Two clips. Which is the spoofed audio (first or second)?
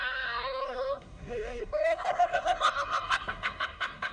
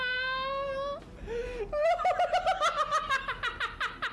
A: first